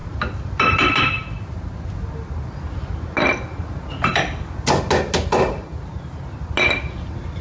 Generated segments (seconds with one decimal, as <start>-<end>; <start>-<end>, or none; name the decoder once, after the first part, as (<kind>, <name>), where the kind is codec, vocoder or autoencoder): none